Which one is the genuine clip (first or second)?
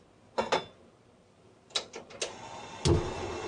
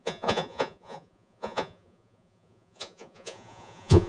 first